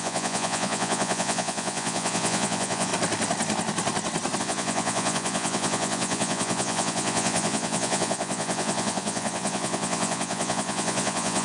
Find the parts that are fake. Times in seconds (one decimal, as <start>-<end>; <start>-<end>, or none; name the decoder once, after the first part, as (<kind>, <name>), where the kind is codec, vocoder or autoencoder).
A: 0.0-2.9 (vocoder, Vocos); 4.4-11.4